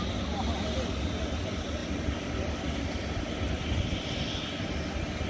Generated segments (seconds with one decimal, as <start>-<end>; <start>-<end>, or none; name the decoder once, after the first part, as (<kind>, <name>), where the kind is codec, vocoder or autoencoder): none